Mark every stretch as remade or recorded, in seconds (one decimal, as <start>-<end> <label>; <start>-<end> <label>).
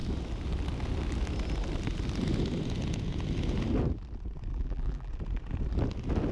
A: 0.0-4.5 recorded; 4.5-5.1 remade; 5.1-6.3 recorded